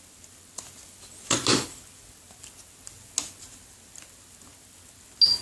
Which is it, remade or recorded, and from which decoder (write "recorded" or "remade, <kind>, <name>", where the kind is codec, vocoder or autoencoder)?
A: recorded